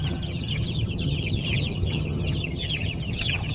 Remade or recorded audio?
remade